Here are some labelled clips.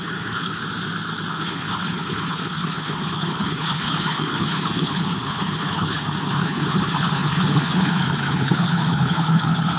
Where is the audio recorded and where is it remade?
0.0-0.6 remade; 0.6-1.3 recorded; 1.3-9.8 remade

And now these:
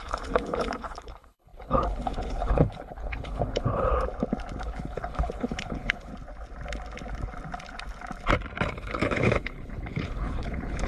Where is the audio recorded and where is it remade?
0.0-3.9 remade; 3.9-4.6 recorded; 4.6-6.1 remade; 6.1-8.7 recorded; 8.7-10.9 remade

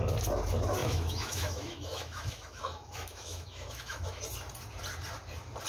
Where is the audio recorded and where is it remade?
0.0-0.8 recorded; 0.8-4.2 remade; 4.2-5.7 recorded

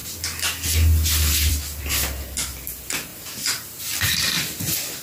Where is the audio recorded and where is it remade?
0.0-3.1 recorded; 3.1-3.8 remade; 3.8-5.0 recorded

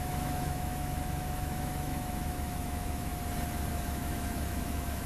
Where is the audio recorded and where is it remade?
0.0-3.1 remade; 3.1-3.7 recorded; 3.7-5.1 remade

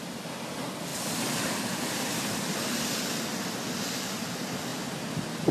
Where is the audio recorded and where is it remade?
0.0-0.9 recorded; 0.9-2.8 remade; 2.8-5.5 recorded

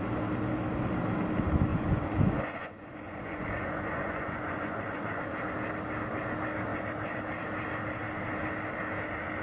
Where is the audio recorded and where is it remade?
0.0-1.7 recorded; 1.7-5.2 remade; 5.2-9.4 recorded

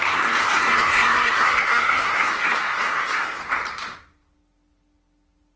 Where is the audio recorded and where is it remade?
0.0-3.4 remade; 3.4-5.6 recorded